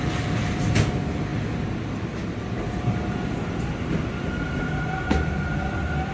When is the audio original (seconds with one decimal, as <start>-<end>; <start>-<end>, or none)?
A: 0.0-6.1